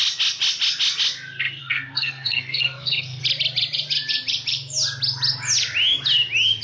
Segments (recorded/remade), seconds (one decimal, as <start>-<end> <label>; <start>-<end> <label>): 0.0-1.6 recorded; 1.6-3.2 remade; 3.2-6.6 recorded

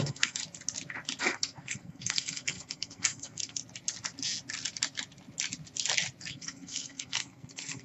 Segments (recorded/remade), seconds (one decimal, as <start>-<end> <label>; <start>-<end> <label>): 0.0-0.4 remade; 0.4-1.2 recorded; 1.2-3.6 remade; 3.6-6.3 recorded; 6.3-7.8 remade

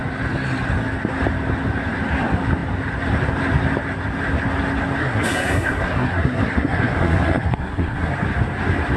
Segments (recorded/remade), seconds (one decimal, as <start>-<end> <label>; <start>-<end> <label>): 0.0-5.0 recorded; 5.0-8.1 remade; 8.1-9.0 recorded

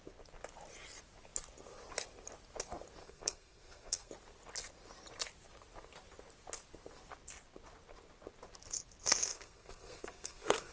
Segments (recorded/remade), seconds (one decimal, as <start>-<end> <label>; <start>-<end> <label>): 0.0-3.0 recorded; 3.0-4.1 remade; 4.1-9.2 recorded; 9.2-10.7 remade

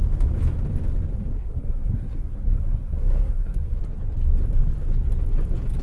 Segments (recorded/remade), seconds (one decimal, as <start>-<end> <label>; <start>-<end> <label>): 0.0-1.1 recorded; 1.1-3.8 remade; 3.8-5.8 recorded

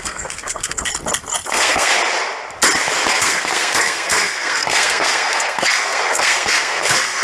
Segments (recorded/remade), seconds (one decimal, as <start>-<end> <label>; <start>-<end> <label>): 0.0-0.9 remade; 0.9-1.5 recorded; 1.5-1.9 remade; 1.9-3.1 recorded; 3.1-7.2 remade